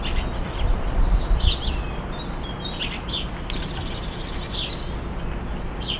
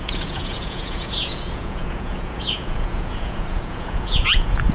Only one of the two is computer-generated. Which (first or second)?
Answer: second